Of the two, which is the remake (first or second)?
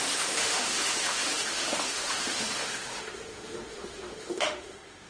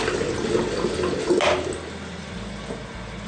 first